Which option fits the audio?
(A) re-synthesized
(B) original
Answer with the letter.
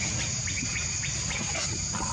B